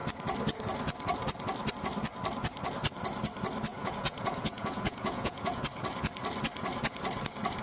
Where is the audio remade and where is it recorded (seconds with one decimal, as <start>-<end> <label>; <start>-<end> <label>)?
0.0-3.7 recorded; 3.7-5.6 remade; 5.6-7.6 recorded